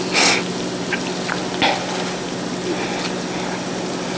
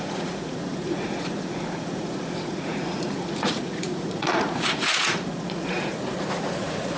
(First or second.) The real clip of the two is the first